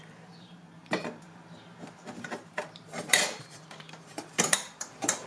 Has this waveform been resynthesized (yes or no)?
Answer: yes